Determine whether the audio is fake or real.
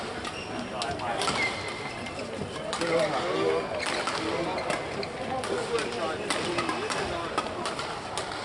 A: real